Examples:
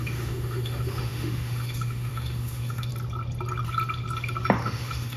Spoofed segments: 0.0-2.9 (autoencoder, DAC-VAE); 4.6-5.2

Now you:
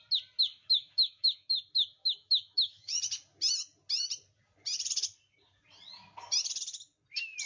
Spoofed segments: 0.5-1.5 (autoencoder, DAC-VAE); 2.0-3.0

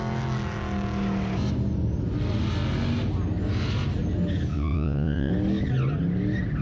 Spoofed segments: 4.5-5.3 (vocoder, WaveNeXt)

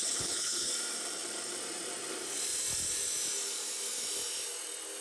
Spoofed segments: 0.0-0.7 (codec, HILCodec)

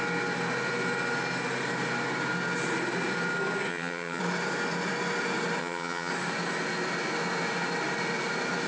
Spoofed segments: 3.7-4.2 (vocoder, HiFi-GAN); 5.6-6.1

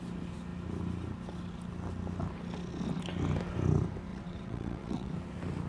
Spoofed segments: 4.1-5.1 (vocoder, WaveNeXt)